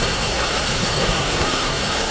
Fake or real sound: fake